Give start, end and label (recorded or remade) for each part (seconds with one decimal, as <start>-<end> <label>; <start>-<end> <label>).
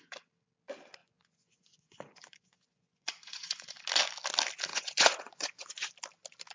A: 0.0-1.0 recorded; 1.0-3.7 remade; 3.7-4.7 recorded; 4.7-5.9 remade; 5.9-6.5 recorded